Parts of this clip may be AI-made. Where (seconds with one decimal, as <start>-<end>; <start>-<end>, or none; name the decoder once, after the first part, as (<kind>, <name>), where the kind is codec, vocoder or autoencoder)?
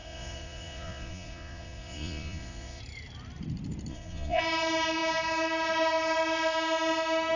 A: 0.0-2.8 (vocoder, Vocos); 3.9-4.4